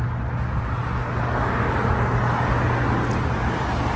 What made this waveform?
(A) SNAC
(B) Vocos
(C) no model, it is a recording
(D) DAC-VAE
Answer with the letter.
C